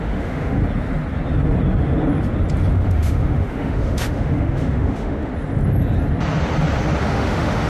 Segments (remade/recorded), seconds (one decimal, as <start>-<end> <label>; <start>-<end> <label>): 0.0-0.6 remade; 0.6-2.7 recorded; 2.7-5.3 remade; 5.3-7.0 recorded; 7.0-7.7 remade

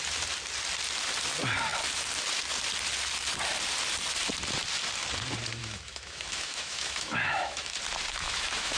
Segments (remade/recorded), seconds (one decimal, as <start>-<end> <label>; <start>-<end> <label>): 0.0-5.6 recorded; 5.6-7.7 remade; 7.7-8.1 recorded; 8.1-8.8 remade

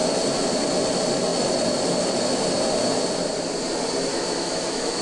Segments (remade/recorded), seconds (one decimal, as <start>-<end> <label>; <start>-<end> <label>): 0.0-4.1 recorded; 4.1-5.0 remade

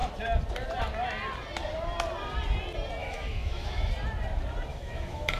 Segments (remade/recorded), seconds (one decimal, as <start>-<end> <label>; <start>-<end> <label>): 0.0-3.0 recorded; 3.0-3.9 remade; 3.9-4.7 recorded; 4.7-5.4 remade

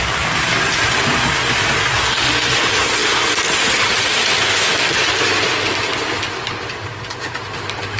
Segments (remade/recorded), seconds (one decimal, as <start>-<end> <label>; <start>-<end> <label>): 0.0-4.2 recorded; 4.2-4.7 remade; 4.7-8.0 recorded

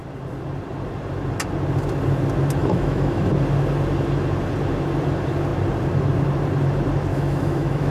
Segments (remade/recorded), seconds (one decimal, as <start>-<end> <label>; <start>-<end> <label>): 0.0-2.6 recorded; 2.6-3.3 remade; 3.3-7.1 recorded; 7.1-7.9 remade